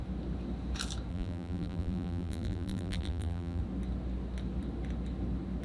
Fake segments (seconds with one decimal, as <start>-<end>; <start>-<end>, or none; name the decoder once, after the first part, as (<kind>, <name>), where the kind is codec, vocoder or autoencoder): 1.1-3.6 (vocoder, BigVGAN v2)